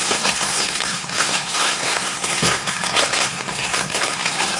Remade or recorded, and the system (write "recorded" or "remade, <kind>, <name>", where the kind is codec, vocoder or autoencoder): remade, codec, SNAC